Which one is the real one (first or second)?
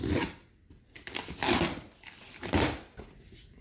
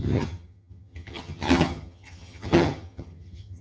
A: first